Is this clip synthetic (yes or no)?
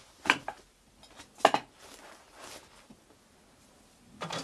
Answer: no